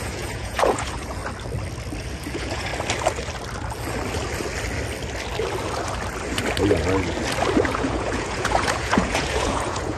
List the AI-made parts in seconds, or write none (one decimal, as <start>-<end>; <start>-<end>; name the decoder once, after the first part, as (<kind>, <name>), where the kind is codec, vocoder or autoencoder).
0.0-1.2 (vocoder, Vocos); 2.0-2.7; 7.6-10.0